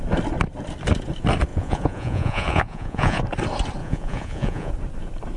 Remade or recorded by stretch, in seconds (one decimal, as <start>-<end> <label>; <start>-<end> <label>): 0.0-1.5 recorded; 1.5-3.2 remade; 3.2-3.8 recorded; 3.8-4.7 remade; 4.7-5.4 recorded